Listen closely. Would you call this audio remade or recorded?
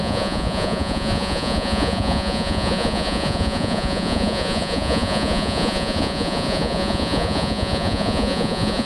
remade